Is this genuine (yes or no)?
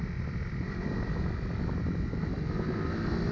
yes